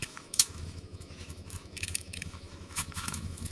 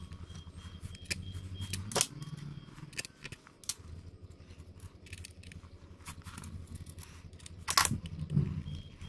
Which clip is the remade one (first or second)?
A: first